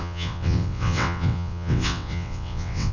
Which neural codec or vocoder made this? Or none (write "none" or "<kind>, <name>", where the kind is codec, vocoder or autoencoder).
vocoder, WaveNeXt